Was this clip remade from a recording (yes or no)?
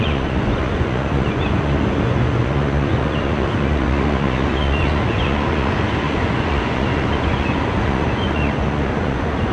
yes